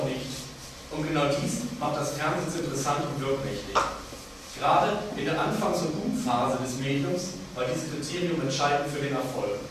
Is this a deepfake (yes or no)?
no